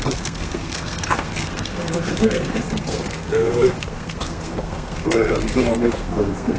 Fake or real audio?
fake